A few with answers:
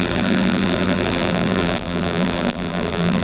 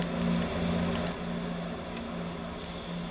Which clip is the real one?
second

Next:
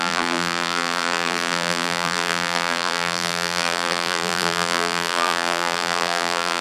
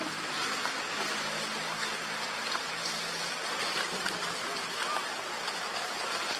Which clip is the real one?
second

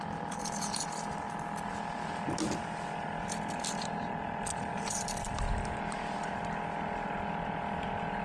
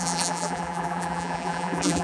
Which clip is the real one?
first